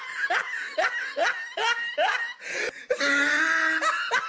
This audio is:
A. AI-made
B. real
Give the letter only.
B